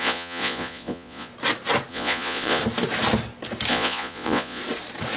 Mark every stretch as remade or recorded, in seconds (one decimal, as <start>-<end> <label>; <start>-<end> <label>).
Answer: 0.0-1.3 remade; 1.3-1.9 recorded; 1.9-2.6 remade; 2.6-3.7 recorded; 3.7-4.6 remade; 4.6-5.2 recorded

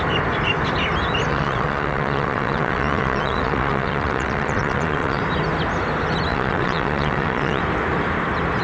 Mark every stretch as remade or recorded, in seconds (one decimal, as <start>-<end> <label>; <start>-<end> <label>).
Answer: 0.0-1.3 recorded; 1.3-5.2 remade; 5.2-6.3 recorded; 6.3-7.6 remade; 7.6-8.6 recorded

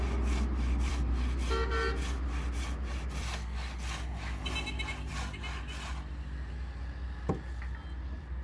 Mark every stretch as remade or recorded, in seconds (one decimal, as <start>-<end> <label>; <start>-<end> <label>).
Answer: 0.0-8.4 recorded